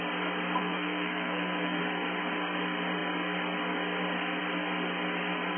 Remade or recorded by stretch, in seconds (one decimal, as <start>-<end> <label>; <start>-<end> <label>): 0.0-0.6 recorded; 0.6-1.8 remade; 1.8-5.6 recorded